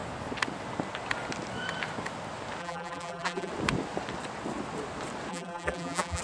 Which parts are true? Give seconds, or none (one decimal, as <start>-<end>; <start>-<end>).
0.0-2.6; 3.5-5.3

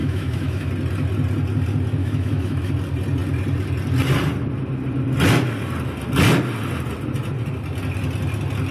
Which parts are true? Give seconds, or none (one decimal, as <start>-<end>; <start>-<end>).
0.7-2.0; 2.7-8.7

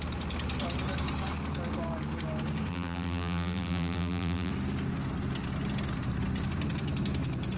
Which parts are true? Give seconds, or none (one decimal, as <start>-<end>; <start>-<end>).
0.0-2.7; 4.5-7.6

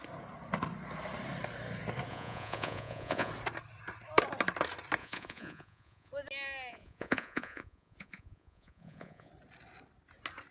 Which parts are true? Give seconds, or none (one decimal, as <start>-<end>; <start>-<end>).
0.0-2.1; 3.3-5.0; 6.1-6.7; 9.3-10.5

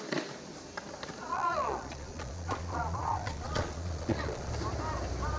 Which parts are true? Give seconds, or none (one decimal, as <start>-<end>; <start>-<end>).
0.0-1.3; 4.5-5.4

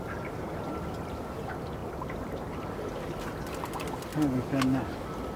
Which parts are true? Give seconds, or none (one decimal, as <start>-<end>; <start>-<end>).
0.0-5.4